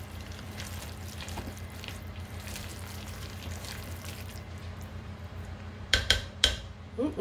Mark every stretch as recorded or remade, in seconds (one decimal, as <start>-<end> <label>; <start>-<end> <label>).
0.0-2.7 remade; 2.7-3.2 recorded; 3.2-4.3 remade; 4.3-4.9 recorded; 4.9-7.2 remade